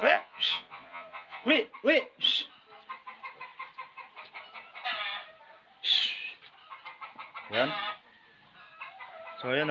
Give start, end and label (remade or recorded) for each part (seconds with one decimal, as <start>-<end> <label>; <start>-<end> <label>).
0.0-1.5 remade; 1.5-9.7 recorded